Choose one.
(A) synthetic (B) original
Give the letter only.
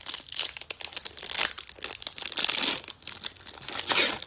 B